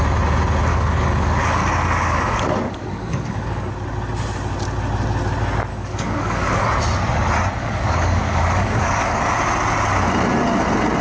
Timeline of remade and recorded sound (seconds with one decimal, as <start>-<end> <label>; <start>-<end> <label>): 0.0-0.7 recorded; 0.7-3.7 remade; 3.7-5.7 recorded; 5.7-6.7 remade; 6.7-7.6 recorded; 7.6-9.2 remade; 9.2-11.0 recorded